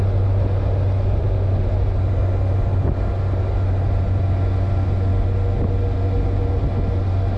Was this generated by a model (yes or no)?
no